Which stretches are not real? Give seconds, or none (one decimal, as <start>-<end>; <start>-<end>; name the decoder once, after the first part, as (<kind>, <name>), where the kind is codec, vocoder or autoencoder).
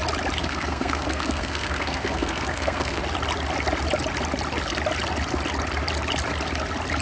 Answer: 0.4-3.0 (codec, SNAC)